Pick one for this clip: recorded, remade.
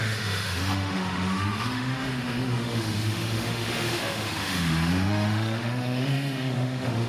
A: remade